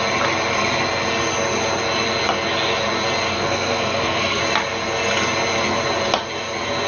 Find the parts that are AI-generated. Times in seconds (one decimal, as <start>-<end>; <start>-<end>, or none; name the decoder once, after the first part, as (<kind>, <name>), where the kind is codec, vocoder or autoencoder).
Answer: 3.3-4.4 (codec, SNAC)